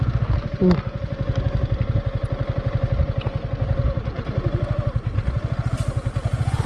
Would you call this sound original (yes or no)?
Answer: yes